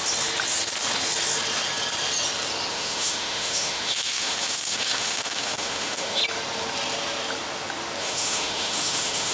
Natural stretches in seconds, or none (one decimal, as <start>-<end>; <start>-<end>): 0.0-2.7; 6.2-8.0